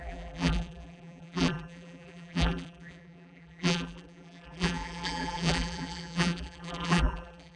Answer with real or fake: fake